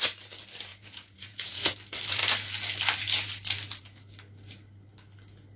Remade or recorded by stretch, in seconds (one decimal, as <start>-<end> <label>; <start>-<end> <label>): 0.0-0.7 recorded; 0.7-1.7 remade; 1.7-5.6 recorded